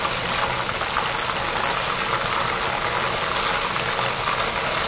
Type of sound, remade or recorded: recorded